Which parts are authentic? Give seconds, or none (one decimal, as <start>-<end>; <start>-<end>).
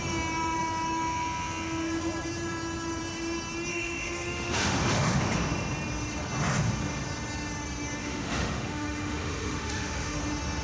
0.0-3.7; 5.2-8.0; 10.2-10.6